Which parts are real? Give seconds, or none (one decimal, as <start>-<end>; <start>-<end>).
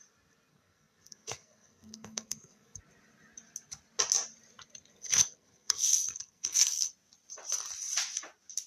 0.0-0.5; 2.8-4.9; 6.9-8.7